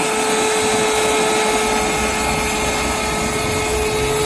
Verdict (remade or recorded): recorded